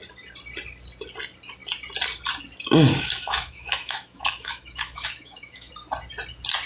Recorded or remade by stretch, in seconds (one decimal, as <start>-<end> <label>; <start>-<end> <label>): 0.0-2.9 recorded; 2.9-5.7 remade; 5.7-6.7 recorded